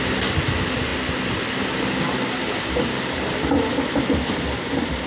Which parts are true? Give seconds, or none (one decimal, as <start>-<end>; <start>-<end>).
0.0-5.1